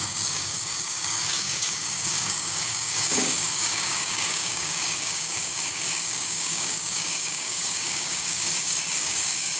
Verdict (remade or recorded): remade